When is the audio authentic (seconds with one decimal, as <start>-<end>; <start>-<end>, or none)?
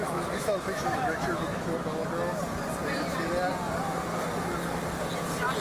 2.0-5.6